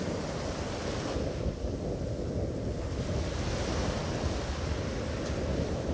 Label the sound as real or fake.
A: real